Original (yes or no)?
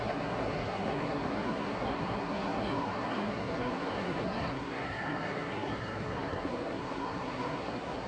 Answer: no